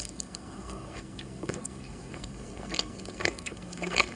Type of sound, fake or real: fake